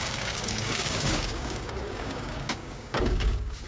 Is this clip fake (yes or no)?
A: yes